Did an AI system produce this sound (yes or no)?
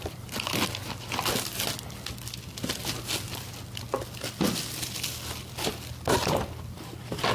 no